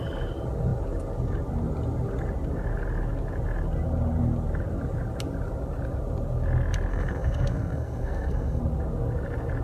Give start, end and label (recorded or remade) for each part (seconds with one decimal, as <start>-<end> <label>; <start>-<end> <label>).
0.0-6.9 recorded; 6.9-8.6 remade; 8.6-9.6 recorded